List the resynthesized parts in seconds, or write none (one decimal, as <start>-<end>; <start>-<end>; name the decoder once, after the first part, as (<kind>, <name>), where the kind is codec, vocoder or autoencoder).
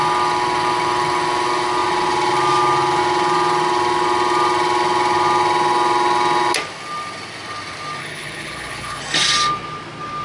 8.0-9.0 (codec, HILCodec)